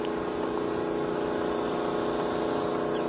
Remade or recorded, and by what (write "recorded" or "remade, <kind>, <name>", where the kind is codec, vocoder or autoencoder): recorded